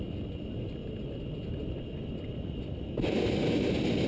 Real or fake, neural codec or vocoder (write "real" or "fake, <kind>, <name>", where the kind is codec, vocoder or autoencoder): real